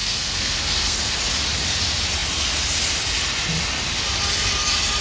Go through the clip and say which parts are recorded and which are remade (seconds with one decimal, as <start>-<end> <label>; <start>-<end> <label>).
0.0-1.2 remade; 1.2-5.0 recorded